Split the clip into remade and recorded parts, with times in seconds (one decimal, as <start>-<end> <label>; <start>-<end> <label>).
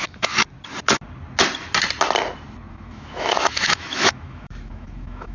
0.0-0.4 remade; 0.4-2.7 recorded; 2.7-5.3 remade